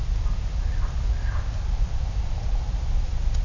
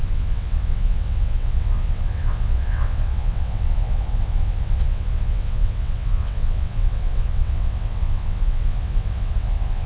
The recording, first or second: first